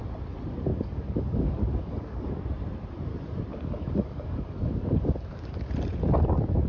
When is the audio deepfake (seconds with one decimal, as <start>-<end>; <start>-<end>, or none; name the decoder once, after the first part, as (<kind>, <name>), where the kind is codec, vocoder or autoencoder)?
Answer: 0.7-2.4 (codec, DAC); 3.5-5.7